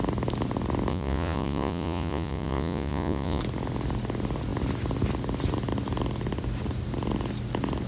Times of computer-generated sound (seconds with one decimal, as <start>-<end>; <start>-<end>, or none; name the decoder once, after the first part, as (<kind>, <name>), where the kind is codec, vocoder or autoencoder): 0.9-3.4 (vocoder, Vocos)